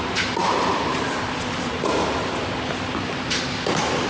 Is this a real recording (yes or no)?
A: yes